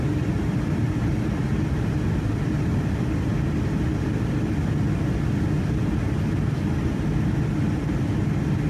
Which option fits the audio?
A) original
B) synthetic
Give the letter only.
A